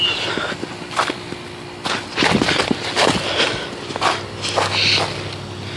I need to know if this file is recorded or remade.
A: recorded